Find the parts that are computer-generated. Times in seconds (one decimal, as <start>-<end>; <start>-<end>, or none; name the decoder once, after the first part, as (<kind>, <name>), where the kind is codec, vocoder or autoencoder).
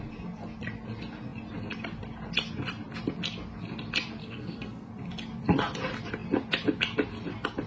4.2-4.9 (codec, SNAC)